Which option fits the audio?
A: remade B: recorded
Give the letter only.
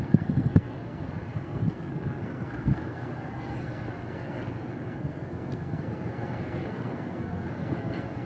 A